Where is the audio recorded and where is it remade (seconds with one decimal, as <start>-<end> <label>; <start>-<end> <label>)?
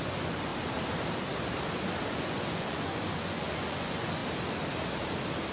0.0-0.5 remade; 0.5-2.1 recorded; 2.1-4.2 remade; 4.2-5.5 recorded